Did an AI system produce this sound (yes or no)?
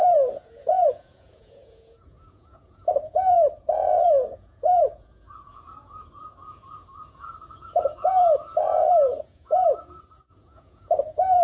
yes